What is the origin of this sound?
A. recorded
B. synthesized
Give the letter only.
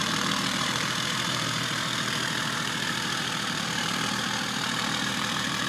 B